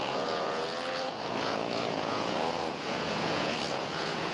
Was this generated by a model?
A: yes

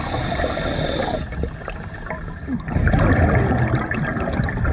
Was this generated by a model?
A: no